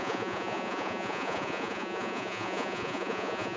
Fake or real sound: fake